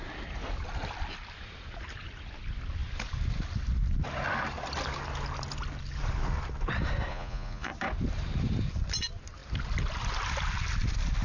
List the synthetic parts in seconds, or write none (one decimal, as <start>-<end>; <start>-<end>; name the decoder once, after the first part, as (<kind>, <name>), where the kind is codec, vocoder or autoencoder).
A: 7.1-7.7 (vocoder, Vocos)